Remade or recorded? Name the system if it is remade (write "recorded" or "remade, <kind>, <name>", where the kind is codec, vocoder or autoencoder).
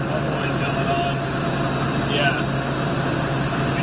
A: recorded